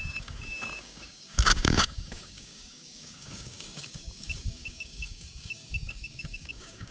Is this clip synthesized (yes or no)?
yes